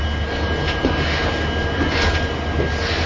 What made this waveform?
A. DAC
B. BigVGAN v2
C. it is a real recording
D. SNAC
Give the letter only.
C